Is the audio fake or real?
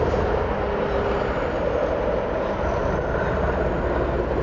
real